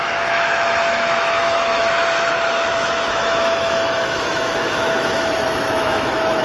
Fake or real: fake